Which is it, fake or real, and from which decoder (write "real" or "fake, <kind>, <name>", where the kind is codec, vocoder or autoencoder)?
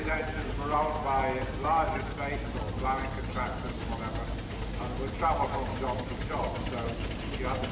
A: real